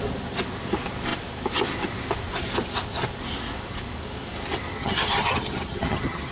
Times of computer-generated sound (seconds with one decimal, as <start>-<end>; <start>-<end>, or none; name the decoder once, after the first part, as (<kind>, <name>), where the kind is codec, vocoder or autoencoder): 4.7-6.3 (vocoder, HiFi-GAN)